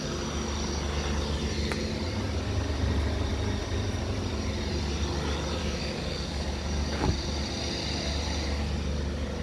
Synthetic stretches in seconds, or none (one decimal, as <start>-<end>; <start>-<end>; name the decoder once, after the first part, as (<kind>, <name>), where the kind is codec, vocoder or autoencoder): 5.6-7.1 (codec, DAC)